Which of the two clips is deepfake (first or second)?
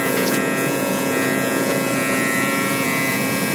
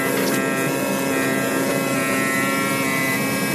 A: first